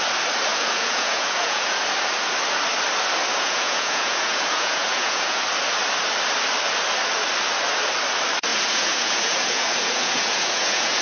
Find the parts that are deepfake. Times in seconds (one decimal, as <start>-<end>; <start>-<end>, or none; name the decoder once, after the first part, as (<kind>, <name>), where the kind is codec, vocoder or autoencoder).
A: 0.5-1.8 (vocoder, Vocos); 3.3-5.4; 8.5-11.0